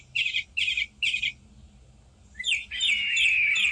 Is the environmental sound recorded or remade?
recorded